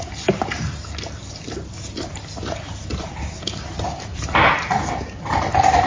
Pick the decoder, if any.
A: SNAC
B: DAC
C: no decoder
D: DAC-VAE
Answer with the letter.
C